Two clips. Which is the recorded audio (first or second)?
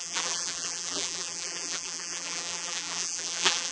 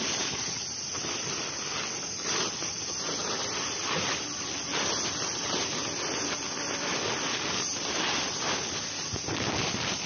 second